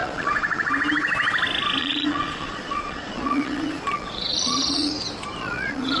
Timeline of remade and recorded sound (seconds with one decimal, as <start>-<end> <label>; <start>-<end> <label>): 0.0-0.7 remade; 0.7-1.8 recorded; 1.8-4.9 remade; 4.9-5.4 recorded; 5.4-6.0 remade